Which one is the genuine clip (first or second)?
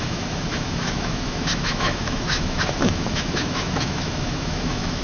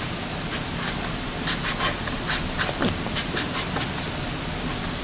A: second